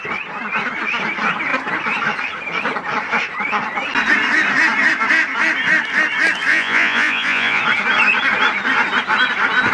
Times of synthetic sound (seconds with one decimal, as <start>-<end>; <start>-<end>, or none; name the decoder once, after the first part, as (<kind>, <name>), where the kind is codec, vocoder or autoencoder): 6.5-7.6 (vocoder, Vocos)